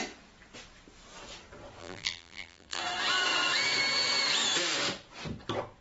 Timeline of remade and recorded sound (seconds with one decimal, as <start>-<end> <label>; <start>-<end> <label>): 0.0-1.8 recorded; 1.8-2.8 remade; 2.8-5.8 recorded